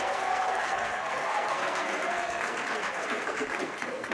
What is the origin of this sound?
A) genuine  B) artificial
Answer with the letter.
B